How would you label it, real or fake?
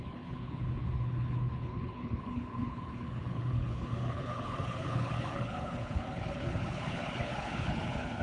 fake